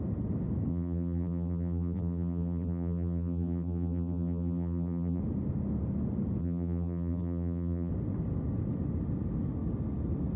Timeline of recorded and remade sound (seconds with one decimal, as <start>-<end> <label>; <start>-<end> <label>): 0.0-0.7 recorded; 0.7-5.2 remade; 5.2-6.4 recorded; 6.4-7.9 remade; 7.9-10.4 recorded